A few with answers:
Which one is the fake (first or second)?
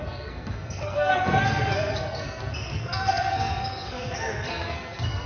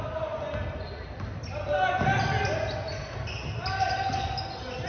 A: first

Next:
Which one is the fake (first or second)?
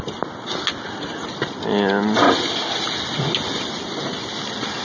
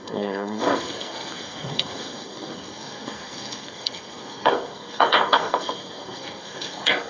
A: second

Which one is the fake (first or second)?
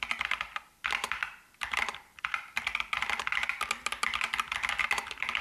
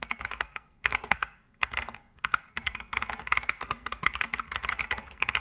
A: second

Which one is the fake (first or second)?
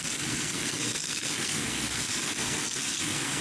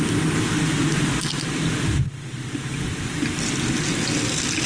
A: first